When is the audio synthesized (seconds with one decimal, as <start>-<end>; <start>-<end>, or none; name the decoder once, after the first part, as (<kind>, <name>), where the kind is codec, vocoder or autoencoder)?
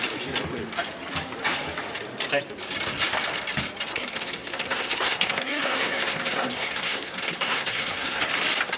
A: 3.9-8.2 (codec, SNAC)